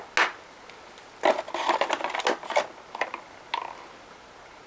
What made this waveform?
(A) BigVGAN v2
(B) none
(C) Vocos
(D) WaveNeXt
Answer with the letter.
B